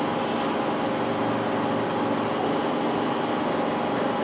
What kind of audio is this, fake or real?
real